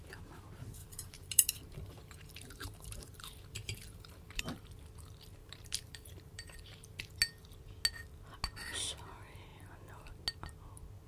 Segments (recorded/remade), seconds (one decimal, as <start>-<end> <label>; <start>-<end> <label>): 0.0-0.8 recorded; 0.8-4.4 remade; 4.4-5.4 recorded; 5.4-7.1 remade; 7.1-11.1 recorded